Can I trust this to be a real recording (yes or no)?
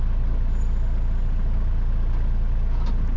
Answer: yes